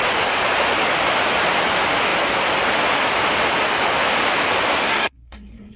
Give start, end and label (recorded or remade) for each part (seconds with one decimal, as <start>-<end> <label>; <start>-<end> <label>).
0.0-4.8 recorded; 4.8-5.8 remade